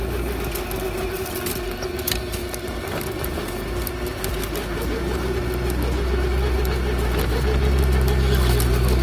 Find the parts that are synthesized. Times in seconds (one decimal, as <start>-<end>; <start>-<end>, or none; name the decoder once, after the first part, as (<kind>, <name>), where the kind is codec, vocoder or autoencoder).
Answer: none